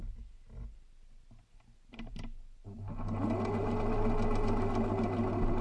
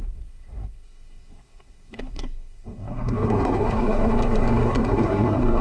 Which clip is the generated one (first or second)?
second